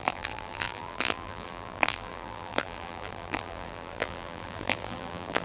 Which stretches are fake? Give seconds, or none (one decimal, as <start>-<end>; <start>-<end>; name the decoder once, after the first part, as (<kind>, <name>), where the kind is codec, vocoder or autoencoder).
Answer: 0.0-5.4 (vocoder, BigVGAN v2)